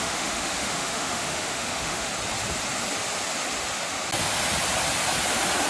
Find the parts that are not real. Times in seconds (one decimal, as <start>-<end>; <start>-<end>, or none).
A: 0.0-2.1